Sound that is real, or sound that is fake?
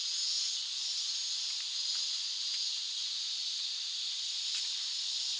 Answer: real